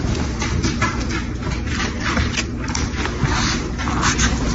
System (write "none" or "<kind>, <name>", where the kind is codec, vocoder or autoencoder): none